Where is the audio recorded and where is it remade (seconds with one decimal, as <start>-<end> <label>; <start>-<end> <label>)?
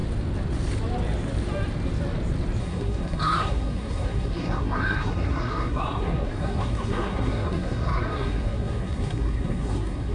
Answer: 0.0-2.6 recorded; 2.6-10.1 remade